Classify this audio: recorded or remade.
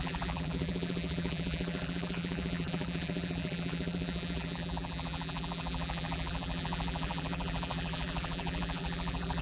remade